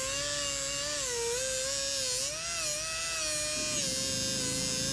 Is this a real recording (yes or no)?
yes